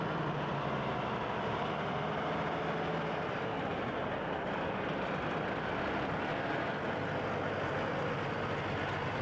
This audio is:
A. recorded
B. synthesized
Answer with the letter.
A